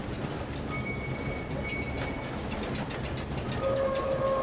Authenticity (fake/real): real